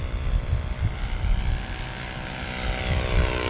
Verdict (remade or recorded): recorded